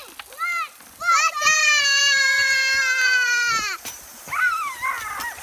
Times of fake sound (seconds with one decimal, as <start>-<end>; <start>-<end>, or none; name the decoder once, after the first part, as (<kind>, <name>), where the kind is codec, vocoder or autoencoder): 1.6-4.8 (vocoder, BigVGAN v2)